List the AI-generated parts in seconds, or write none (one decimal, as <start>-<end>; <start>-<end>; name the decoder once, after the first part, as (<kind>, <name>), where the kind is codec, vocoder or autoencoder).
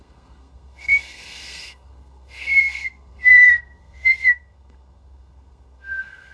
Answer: 0.0-6.3 (codec, SNAC)